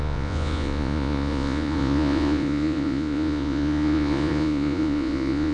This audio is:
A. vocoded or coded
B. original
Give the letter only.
A